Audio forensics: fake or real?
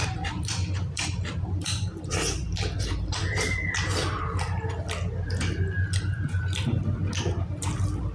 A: fake